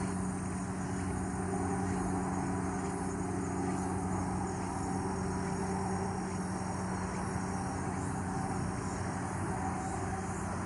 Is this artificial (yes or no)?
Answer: no